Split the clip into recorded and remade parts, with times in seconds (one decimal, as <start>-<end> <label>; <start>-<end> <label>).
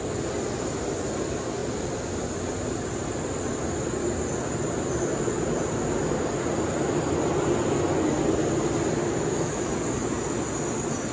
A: 0.0-9.0 recorded; 9.0-9.7 remade; 9.7-11.1 recorded